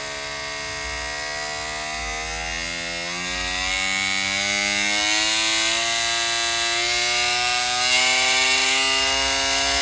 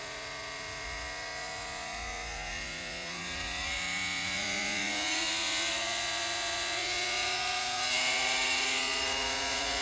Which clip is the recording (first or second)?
first